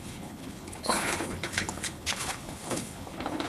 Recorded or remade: remade